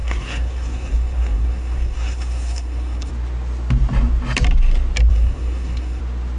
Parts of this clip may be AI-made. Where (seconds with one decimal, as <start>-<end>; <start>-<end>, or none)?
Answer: 0.0-3.1; 5.1-6.0